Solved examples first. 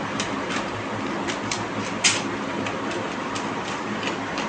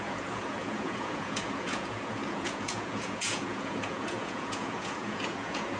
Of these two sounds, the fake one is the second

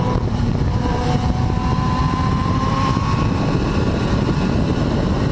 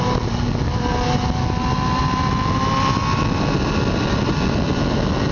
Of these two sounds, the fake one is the first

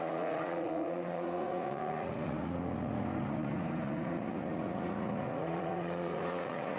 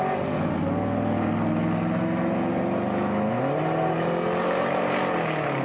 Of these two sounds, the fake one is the first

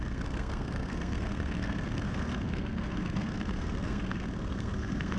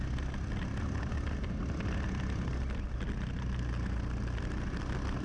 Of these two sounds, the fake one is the first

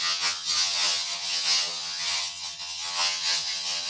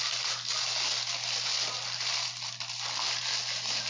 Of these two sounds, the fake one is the first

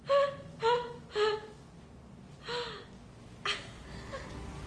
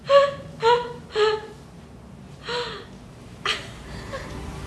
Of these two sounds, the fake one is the second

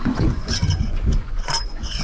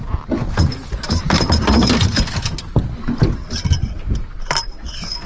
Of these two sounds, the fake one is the first